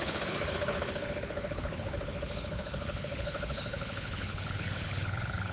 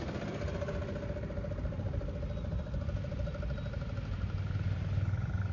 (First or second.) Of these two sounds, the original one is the second